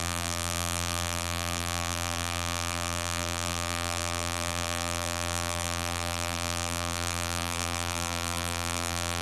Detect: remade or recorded remade